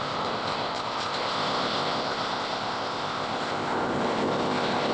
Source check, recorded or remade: remade